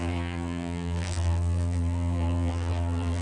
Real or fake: fake